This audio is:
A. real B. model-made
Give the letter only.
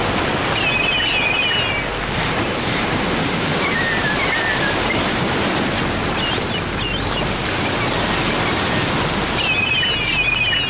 A